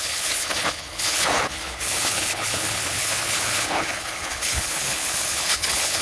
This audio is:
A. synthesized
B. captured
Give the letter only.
A